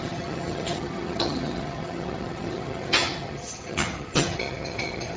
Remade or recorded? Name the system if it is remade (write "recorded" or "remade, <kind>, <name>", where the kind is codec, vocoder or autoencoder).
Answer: remade, vocoder, HiFi-GAN